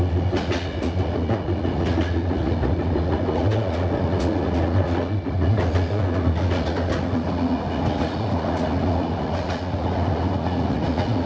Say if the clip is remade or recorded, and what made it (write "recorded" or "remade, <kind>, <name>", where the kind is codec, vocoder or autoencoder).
remade, vocoder, Vocos